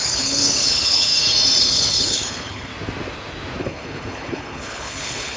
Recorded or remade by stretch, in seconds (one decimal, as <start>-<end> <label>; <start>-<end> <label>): 0.0-1.1 remade; 1.1-1.6 recorded; 1.6-2.7 remade; 2.7-3.6 recorded; 3.6-5.4 remade